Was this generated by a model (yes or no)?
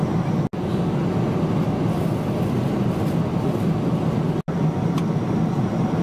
no